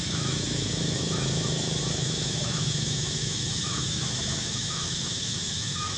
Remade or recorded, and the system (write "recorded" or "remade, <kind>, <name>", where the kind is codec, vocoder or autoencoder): remade, autoencoder, DAC-VAE